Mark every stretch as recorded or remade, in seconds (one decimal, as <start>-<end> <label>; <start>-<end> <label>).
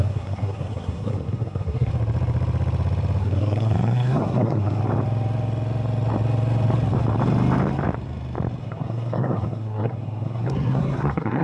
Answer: 0.0-1.9 remade; 1.9-3.2 recorded; 3.2-4.8 remade; 4.8-8.6 recorded; 8.6-11.4 remade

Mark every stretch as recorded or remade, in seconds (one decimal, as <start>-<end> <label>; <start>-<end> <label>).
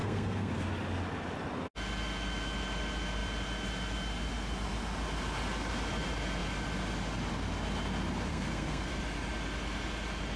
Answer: 0.0-0.5 remade; 0.5-8.3 recorded; 8.3-8.9 remade; 8.9-10.4 recorded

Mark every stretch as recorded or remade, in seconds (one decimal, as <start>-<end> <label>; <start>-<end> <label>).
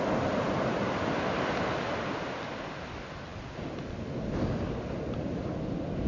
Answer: 0.0-6.1 recorded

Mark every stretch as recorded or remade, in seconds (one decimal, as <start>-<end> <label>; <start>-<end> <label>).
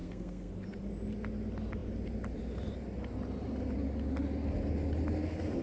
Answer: 0.0-0.5 remade; 0.5-5.6 recorded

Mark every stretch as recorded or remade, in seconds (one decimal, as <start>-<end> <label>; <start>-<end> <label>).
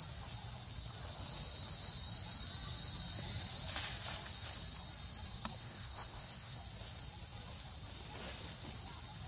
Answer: 0.0-5.6 recorded; 5.6-6.6 remade; 6.6-9.3 recorded